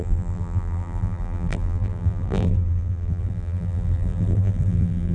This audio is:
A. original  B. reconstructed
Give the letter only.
B